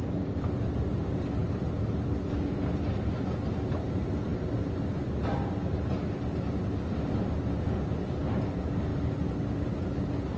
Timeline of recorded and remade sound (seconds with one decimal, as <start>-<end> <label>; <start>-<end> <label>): 0.0-10.4 recorded